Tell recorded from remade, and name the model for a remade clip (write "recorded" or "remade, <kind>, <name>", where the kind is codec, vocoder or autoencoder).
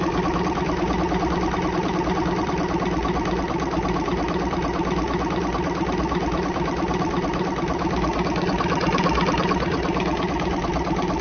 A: recorded